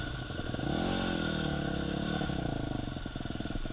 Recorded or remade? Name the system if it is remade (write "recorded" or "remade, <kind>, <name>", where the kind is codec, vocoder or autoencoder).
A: recorded